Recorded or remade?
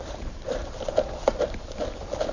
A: recorded